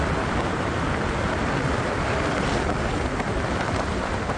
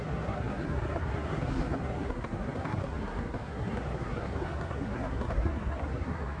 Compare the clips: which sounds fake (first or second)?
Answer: second